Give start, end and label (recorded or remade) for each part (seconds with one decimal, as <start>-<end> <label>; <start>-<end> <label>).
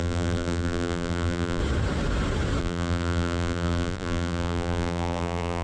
0.0-1.6 remade; 1.6-2.6 recorded; 2.6-5.6 remade